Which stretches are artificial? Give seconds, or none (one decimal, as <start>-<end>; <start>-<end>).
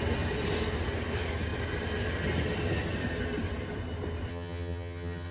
4.3-5.3